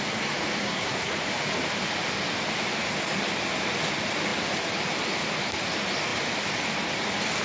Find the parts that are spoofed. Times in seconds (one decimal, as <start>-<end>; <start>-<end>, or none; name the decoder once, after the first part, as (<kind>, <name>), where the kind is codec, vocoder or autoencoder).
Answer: 0.6-1.1 (codec, SNAC)